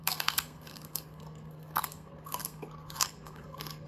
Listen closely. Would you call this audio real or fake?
fake